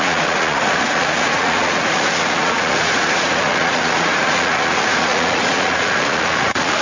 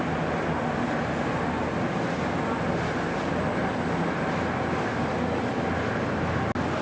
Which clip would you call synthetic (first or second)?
first